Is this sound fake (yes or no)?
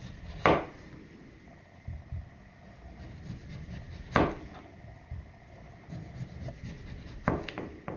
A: no